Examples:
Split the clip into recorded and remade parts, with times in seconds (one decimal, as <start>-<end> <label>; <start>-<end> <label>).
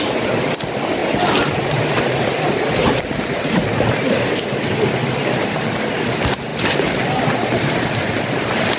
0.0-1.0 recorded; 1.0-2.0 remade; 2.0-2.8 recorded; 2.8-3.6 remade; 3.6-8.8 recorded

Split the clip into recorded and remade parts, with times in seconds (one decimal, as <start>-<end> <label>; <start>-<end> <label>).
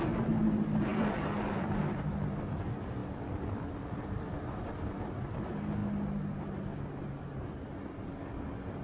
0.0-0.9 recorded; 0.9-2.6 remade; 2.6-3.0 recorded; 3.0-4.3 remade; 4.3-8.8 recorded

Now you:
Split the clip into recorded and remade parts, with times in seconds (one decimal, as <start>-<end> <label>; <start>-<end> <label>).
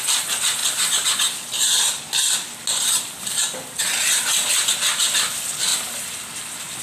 0.0-6.8 recorded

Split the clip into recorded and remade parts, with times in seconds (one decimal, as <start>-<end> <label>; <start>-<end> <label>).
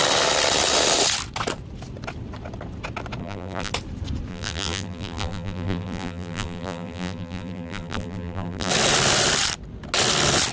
0.0-3.2 recorded; 3.2-3.7 remade; 3.7-4.3 recorded; 4.3-8.7 remade; 8.7-10.5 recorded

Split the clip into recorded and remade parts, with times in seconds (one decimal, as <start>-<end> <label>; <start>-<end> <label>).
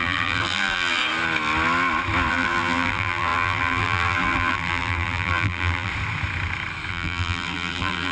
0.0-1.0 remade; 1.0-2.3 recorded; 2.3-5.9 remade; 5.9-6.9 recorded; 6.9-8.1 remade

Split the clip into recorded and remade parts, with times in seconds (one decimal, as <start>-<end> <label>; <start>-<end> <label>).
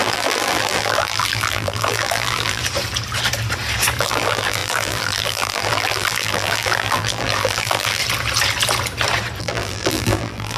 0.0-2.6 remade; 2.6-4.0 recorded; 4.0-8.0 remade; 8.0-9.4 recorded; 9.4-10.6 remade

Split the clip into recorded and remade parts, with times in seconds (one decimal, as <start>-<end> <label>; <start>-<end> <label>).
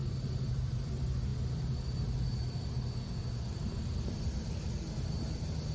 0.0-0.9 remade; 0.9-5.7 recorded